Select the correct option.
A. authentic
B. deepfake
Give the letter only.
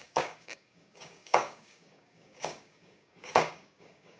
B